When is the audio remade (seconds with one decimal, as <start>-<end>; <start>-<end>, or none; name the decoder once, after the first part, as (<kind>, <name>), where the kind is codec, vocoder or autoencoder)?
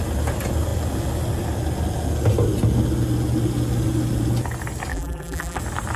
4.9-5.6 (vocoder, BigVGAN v2)